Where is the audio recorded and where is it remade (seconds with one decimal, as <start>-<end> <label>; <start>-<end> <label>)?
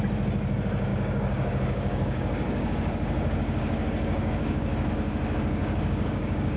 0.0-0.9 recorded; 0.9-4.9 remade; 4.9-5.6 recorded; 5.6-6.6 remade